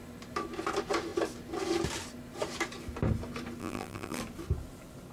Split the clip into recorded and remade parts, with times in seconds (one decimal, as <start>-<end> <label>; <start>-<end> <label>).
0.0-3.6 recorded; 3.6-4.2 remade; 4.2-5.1 recorded